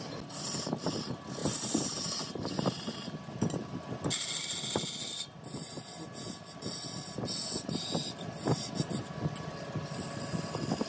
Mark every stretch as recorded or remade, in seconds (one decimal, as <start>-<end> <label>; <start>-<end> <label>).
0.0-10.9 recorded

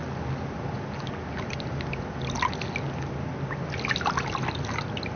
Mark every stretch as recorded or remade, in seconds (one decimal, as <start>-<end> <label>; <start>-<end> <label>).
0.0-5.2 recorded

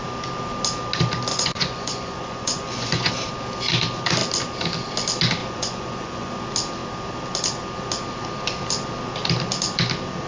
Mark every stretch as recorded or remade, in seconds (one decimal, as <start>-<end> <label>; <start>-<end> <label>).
0.0-1.3 recorded; 1.3-3.1 remade; 3.1-5.4 recorded; 5.4-6.3 remade; 6.3-10.3 recorded

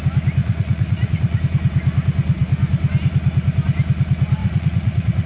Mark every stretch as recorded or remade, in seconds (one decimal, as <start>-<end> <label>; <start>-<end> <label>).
0.0-0.4 recorded; 0.4-1.4 remade; 1.4-4.4 recorded; 4.4-5.3 remade

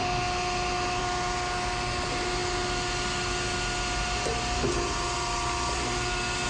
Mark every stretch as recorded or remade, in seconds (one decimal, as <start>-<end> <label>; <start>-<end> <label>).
0.0-6.5 recorded

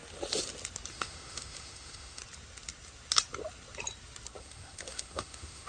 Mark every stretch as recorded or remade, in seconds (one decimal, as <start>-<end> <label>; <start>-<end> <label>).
0.0-0.9 recorded; 0.9-2.2 remade; 2.2-4.4 recorded; 4.4-5.7 remade

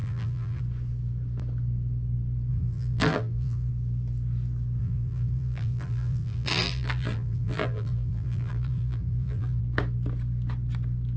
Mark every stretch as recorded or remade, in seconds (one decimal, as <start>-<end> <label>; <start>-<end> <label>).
0.0-0.6 remade; 0.6-2.5 recorded; 2.5-3.7 remade; 3.7-4.8 recorded; 4.8-9.6 remade; 9.6-11.2 recorded